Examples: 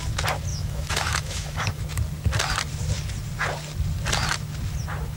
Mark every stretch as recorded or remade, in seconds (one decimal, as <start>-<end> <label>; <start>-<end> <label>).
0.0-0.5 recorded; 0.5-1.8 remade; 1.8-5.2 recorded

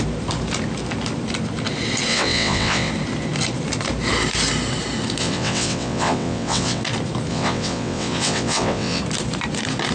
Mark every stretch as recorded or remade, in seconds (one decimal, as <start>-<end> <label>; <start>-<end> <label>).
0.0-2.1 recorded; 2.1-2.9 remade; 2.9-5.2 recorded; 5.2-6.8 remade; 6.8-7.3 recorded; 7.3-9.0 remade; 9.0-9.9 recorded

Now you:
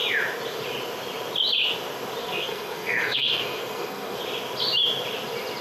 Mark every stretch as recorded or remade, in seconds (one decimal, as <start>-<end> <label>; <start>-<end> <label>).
0.0-2.2 recorded; 2.2-4.2 remade; 4.2-5.6 recorded

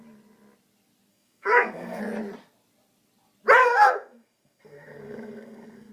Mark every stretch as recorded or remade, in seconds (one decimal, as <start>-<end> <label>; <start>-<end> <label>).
0.0-1.1 recorded; 1.1-2.0 remade; 2.0-3.6 recorded; 3.6-5.9 remade

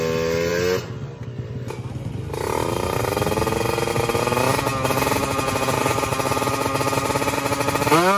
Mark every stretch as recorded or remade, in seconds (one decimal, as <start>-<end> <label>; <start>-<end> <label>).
0.0-8.2 recorded

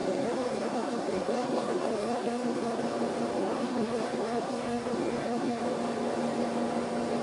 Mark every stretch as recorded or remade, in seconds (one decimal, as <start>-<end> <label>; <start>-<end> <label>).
0.0-2.8 remade; 2.8-3.4 recorded; 3.4-5.6 remade; 5.6-7.2 recorded

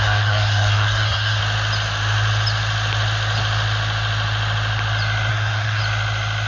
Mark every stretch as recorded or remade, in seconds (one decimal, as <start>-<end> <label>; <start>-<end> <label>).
0.0-1.4 remade; 1.4-5.3 recorded; 5.3-5.8 remade; 5.8-6.5 recorded